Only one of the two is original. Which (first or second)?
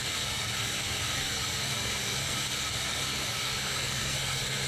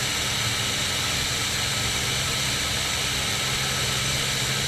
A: second